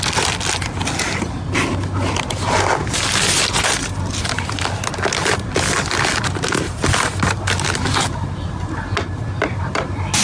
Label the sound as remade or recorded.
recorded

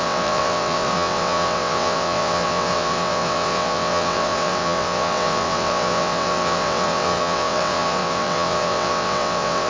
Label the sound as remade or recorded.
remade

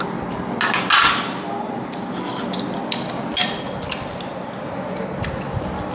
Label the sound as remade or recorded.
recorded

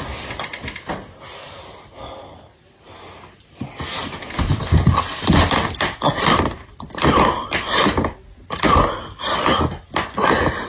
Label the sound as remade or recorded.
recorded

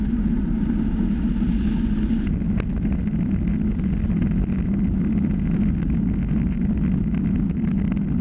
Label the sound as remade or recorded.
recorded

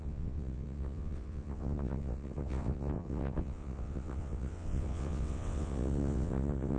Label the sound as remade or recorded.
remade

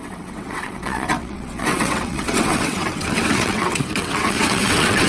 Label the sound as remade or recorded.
remade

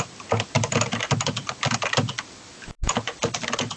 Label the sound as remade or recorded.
recorded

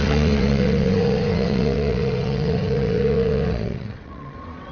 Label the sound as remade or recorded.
remade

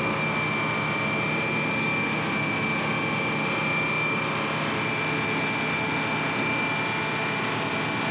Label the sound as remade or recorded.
recorded